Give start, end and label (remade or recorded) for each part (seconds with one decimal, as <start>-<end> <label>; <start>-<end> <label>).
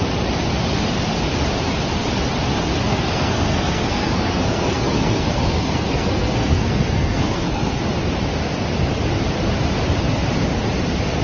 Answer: 0.0-2.8 recorded; 2.8-7.8 remade; 7.8-11.2 recorded